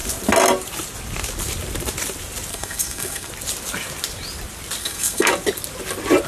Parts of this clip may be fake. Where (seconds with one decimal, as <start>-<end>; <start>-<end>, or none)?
2.5-3.3; 4.8-5.3